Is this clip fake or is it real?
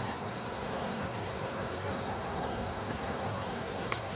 fake